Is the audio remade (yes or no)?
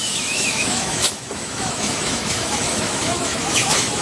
yes